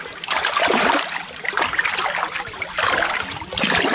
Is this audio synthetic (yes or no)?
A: no